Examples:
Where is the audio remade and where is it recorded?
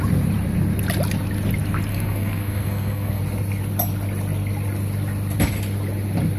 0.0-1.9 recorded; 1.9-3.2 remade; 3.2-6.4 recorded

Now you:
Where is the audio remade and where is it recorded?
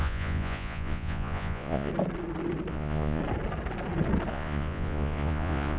0.0-1.9 remade; 1.9-2.7 recorded; 2.7-3.2 remade; 3.2-4.3 recorded; 4.3-5.8 remade